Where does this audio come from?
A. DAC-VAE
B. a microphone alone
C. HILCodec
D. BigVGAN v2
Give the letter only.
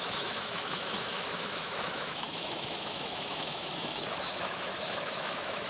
A